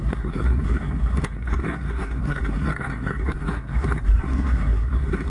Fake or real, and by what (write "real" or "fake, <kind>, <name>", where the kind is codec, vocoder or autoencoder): fake, codec, SNAC